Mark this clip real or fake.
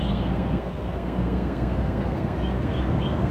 fake